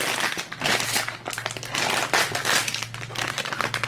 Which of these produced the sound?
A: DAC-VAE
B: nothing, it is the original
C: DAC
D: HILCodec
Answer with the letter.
B